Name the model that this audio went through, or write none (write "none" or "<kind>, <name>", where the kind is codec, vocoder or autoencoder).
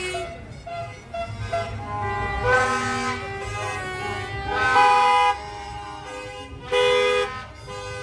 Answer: none